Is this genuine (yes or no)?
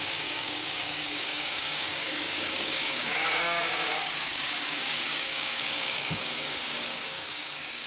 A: no